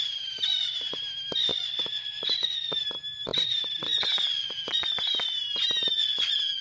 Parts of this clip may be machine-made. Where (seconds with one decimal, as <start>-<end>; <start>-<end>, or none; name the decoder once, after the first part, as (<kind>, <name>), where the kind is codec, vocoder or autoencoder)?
1.5-2.7 (vocoder, Vocos)